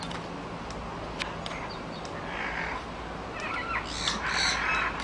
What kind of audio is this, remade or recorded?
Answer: recorded